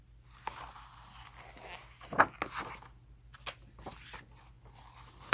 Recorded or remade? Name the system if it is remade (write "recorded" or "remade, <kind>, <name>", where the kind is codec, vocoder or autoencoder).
recorded